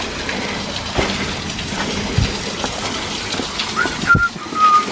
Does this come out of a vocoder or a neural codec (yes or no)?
no